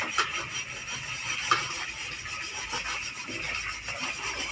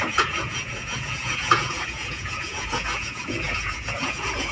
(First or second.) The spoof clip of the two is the second